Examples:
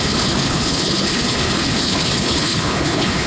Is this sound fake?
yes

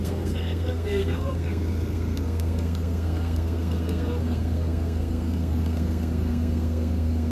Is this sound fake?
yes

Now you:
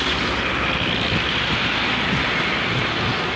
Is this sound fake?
no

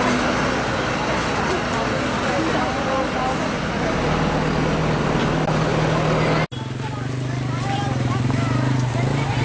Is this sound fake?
no